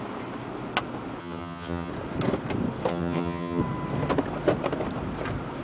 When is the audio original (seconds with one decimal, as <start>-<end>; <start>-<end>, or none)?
0.0-1.2; 1.9-2.9; 3.6-5.6

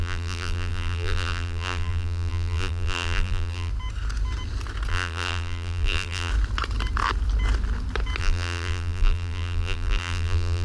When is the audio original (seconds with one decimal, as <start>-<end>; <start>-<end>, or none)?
3.7-4.9; 6.3-8.2

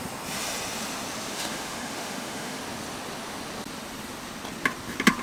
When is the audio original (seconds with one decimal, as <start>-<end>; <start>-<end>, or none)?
0.0-1.3; 2.6-5.2

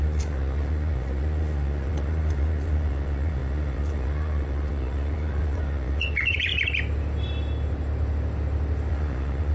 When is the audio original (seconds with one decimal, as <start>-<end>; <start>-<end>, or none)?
6.5-8.9

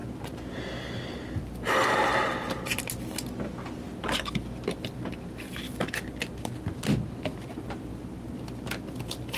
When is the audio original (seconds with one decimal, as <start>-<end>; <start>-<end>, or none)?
0.0-1.4; 2.1-7.2; 7.9-8.9

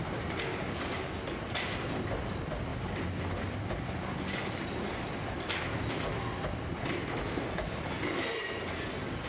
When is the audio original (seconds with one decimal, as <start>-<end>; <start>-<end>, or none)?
0.0-0.5; 1.2-9.3

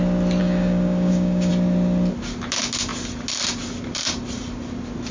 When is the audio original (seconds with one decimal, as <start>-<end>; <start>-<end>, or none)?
0.0-0.4; 1.5-5.1